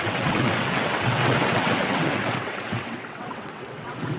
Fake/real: fake